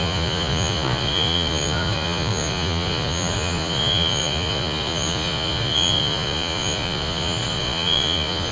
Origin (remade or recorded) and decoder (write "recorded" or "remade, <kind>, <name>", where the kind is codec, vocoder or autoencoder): remade, vocoder, Vocos